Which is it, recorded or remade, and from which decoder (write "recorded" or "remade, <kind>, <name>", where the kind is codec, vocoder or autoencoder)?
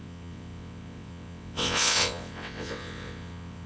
remade, vocoder, WaveNeXt